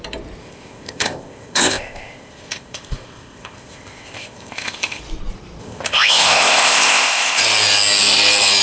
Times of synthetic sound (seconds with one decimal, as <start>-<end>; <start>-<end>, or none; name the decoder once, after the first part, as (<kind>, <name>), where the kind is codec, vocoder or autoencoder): 0.4-5.0 (codec, ZipCodec); 5.6-7.4